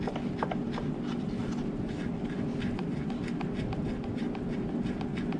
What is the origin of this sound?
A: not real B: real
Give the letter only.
B